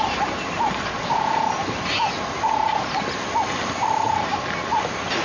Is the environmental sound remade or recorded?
recorded